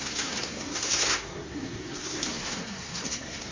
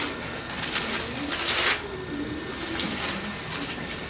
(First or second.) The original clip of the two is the second